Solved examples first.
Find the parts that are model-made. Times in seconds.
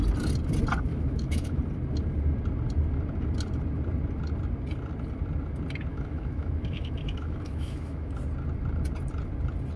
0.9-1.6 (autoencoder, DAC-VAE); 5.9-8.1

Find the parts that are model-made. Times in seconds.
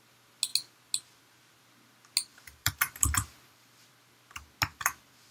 2.3-3.9 (vocoder, BigVGAN v2); 4.7-5.3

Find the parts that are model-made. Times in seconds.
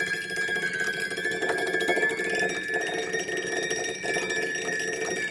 none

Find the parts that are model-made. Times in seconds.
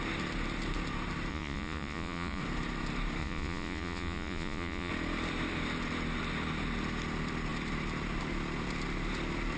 1.3-2.4 (vocoder, Vocos); 3.2-4.9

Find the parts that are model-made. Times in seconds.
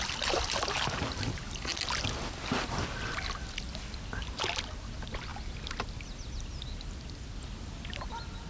none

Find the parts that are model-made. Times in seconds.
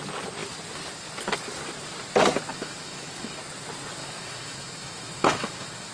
2.5-3.4 (autoencoder, DAC-VAE); 4.0-5.9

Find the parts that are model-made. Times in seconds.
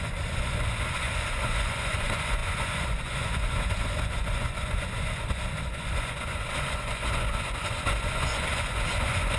0.0-9.4 (vocoder, Vocos)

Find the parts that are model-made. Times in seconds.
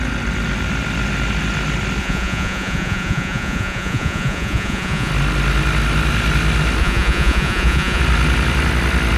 2.0-5.1 (vocoder, Vocos); 6.8-8.0